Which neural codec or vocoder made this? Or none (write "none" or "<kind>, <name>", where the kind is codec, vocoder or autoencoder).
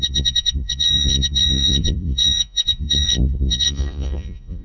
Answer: vocoder, Vocos